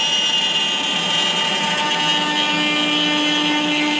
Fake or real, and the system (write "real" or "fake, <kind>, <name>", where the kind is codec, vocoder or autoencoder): real